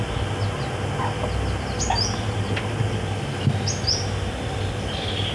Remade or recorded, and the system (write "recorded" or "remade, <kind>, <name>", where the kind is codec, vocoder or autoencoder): recorded